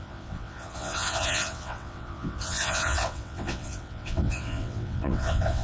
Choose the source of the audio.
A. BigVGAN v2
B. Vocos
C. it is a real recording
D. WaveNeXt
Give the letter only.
D